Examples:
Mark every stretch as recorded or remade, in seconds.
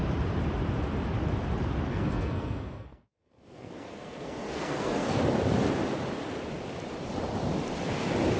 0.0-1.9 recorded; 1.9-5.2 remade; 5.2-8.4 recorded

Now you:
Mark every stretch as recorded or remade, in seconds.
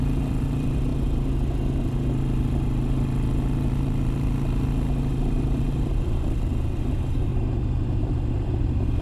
0.0-0.9 remade; 0.9-5.1 recorded; 5.1-7.3 remade; 7.3-8.0 recorded; 8.0-9.0 remade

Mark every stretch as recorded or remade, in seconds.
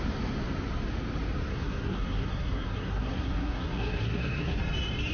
0.0-1.5 recorded; 1.5-4.6 remade; 4.6-5.1 recorded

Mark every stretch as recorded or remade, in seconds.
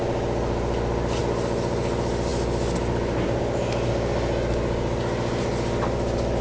0.0-6.4 recorded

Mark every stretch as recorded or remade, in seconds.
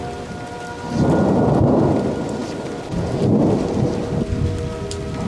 0.0-5.3 recorded